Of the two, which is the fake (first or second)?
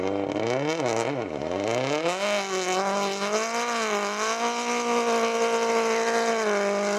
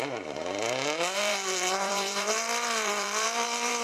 second